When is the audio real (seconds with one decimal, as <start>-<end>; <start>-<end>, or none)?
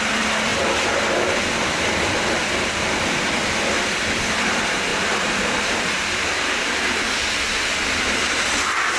0.0-4.9; 7.0-9.0